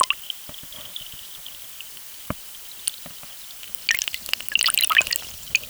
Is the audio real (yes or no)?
yes